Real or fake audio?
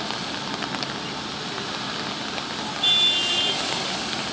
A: real